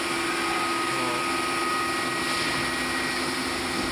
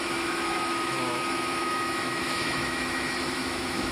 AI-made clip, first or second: second